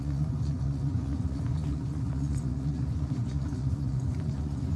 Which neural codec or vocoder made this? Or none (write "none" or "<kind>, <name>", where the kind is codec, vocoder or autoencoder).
vocoder, Vocos